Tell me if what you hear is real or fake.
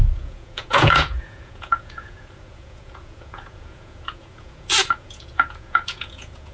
fake